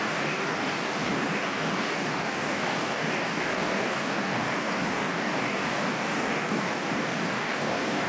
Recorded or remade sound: remade